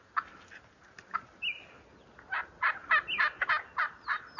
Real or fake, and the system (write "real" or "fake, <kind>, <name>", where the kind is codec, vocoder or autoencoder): real